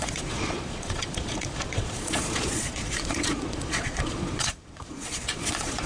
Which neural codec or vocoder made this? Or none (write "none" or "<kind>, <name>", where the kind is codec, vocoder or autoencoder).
vocoder, Vocos